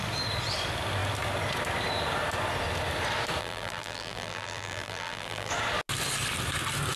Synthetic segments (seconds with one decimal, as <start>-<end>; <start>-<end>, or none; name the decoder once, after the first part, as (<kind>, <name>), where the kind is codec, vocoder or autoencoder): 3.4-5.5 (vocoder, BigVGAN v2)